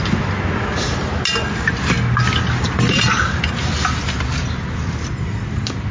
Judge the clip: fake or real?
real